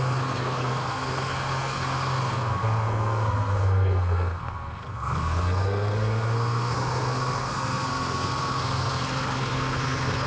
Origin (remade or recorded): remade